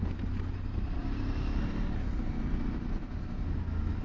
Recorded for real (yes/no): yes